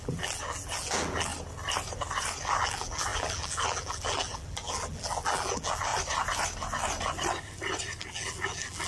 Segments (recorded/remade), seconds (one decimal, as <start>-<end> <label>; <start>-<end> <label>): 0.0-1.3 remade; 1.3-2.4 recorded; 2.4-5.9 remade; 5.9-8.0 recorded; 8.0-8.9 remade